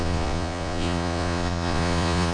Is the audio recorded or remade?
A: remade